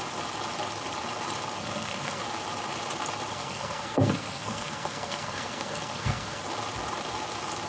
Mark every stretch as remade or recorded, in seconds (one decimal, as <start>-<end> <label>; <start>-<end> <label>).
0.0-1.6 recorded; 1.6-2.2 remade; 2.2-3.3 recorded; 3.3-6.4 remade; 6.4-7.7 recorded